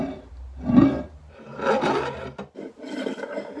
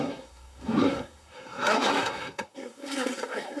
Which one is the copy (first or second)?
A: second